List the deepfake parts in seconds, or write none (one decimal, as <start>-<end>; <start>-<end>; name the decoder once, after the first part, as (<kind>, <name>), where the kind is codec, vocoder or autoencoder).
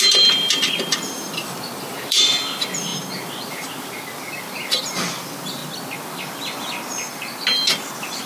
0.0-2.9 (vocoder, BigVGAN v2); 4.8-5.6; 7.1-8.3